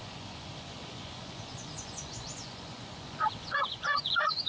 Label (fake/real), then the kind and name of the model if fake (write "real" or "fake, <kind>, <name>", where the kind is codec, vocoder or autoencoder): fake, vocoder, Vocos